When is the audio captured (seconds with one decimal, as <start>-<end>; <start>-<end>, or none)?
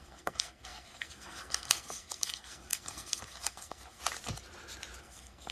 4.0-5.0